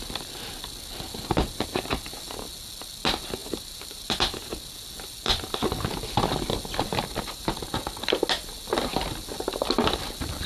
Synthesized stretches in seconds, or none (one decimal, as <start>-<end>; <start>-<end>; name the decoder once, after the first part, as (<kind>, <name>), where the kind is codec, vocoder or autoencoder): 3.4-4.6 (vocoder, BigVGAN v2); 6.9-7.5